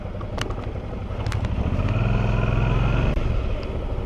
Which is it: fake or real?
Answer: real